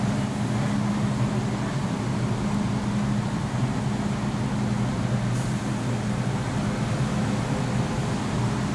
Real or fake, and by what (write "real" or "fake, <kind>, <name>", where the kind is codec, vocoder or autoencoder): real